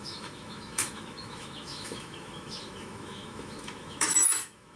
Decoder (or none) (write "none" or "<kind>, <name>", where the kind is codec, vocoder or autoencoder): autoencoder, DAC-VAE